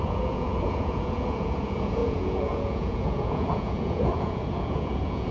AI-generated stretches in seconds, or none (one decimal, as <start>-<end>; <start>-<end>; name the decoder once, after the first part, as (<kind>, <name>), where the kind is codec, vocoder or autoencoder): 0.0-5.3 (vocoder, Vocos)